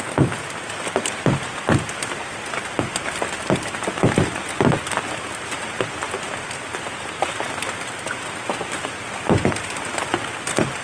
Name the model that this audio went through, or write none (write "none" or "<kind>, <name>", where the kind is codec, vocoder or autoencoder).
none